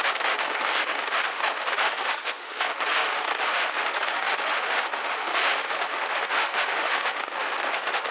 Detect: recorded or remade remade